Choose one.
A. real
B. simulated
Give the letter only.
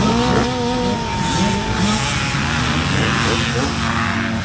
A